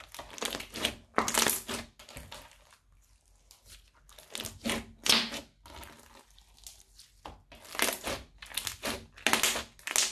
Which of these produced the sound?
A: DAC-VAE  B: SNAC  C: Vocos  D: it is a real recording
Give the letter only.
D